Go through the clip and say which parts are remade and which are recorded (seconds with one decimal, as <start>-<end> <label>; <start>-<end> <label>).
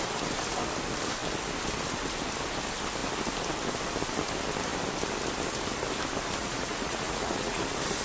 0.0-6.4 recorded; 6.4-7.6 remade; 7.6-8.0 recorded